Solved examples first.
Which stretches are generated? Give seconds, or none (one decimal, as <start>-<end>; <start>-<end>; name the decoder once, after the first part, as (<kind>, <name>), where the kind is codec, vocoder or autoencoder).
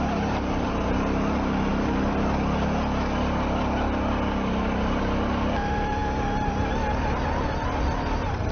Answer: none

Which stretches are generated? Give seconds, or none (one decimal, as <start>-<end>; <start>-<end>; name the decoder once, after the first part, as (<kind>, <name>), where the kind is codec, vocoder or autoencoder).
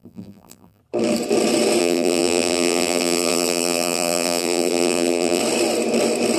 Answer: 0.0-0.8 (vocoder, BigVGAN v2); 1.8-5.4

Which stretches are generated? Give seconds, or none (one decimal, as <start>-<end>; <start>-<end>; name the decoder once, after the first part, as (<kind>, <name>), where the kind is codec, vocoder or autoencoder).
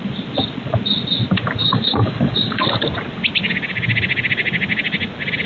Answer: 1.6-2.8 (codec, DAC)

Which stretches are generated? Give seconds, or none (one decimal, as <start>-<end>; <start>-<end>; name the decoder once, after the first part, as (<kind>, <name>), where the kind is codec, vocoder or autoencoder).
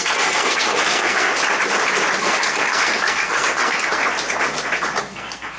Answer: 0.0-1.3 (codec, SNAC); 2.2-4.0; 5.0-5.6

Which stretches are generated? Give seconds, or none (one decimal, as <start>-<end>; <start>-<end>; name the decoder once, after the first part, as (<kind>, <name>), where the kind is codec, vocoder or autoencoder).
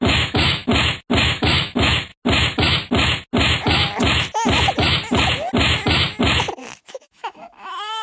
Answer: 0.0-0.7 (autoencoder, DAC-VAE); 1.2-2.1; 6.9-8.0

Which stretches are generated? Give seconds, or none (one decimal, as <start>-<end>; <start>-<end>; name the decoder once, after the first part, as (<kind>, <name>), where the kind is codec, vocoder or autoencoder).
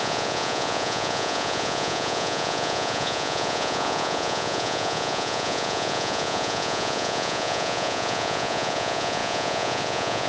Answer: 0.0-10.3 (vocoder, Vocos)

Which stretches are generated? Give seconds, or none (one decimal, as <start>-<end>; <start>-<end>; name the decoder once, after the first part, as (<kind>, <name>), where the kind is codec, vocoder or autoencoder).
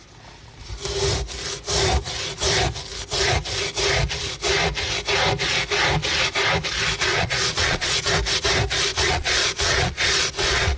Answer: 7.1-8.1 (vocoder, Vocos); 8.9-10.8